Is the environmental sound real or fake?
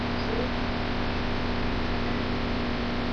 real